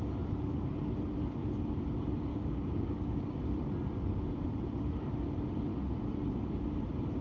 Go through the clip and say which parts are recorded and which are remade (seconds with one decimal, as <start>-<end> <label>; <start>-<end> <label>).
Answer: 0.0-2.3 recorded; 2.3-3.4 remade; 3.4-7.2 recorded